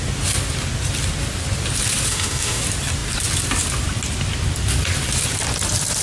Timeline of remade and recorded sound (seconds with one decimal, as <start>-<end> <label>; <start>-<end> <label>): 0.0-2.1 recorded; 2.1-2.6 remade; 2.6-6.0 recorded